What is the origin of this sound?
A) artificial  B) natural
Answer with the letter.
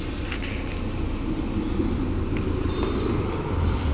B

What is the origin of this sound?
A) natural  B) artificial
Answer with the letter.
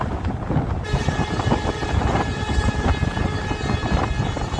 A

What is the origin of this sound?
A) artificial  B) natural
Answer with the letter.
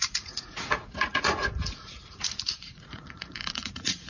A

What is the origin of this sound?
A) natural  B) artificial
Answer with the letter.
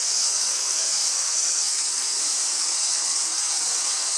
B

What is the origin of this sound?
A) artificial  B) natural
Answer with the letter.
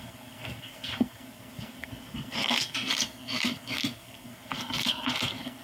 A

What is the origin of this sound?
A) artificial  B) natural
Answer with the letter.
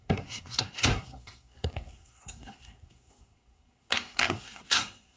A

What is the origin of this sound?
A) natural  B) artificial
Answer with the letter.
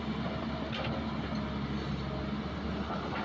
A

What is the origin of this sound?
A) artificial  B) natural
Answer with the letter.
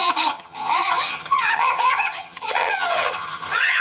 A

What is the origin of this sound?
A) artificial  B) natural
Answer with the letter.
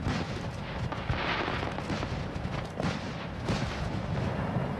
B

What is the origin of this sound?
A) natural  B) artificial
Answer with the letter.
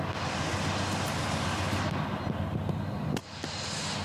A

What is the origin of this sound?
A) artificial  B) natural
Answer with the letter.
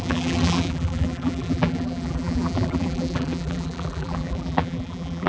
A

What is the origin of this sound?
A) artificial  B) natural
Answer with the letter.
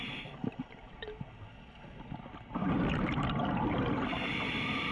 B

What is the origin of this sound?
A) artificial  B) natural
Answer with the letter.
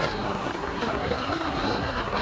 A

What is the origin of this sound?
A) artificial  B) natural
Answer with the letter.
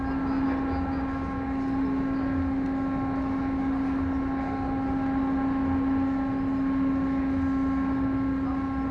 B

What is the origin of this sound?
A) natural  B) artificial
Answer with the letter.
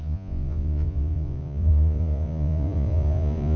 B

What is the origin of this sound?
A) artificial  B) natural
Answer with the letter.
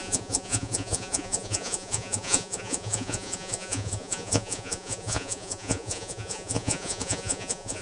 A